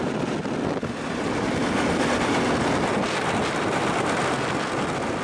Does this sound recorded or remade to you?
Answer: recorded